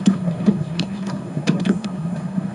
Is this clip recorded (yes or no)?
no